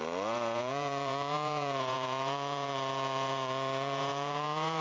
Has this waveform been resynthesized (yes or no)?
yes